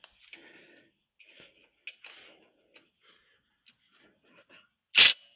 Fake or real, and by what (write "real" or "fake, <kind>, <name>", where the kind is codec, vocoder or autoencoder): real